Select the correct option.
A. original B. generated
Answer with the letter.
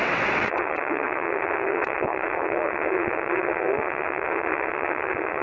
B